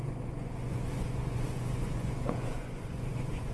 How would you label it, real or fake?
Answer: fake